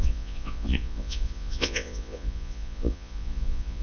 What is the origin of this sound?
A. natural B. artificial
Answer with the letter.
B